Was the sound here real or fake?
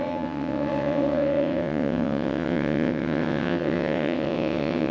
fake